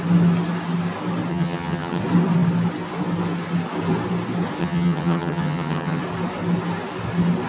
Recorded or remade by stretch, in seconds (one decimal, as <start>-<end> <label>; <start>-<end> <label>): 0.0-1.3 recorded; 1.3-2.0 remade; 2.0-4.6 recorded; 4.6-6.0 remade; 6.0-7.5 recorded